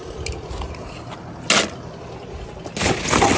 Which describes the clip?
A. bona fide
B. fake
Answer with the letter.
A